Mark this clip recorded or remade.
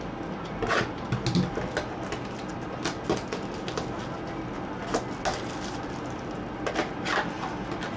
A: recorded